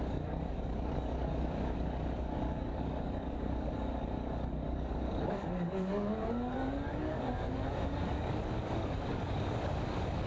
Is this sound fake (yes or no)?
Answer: yes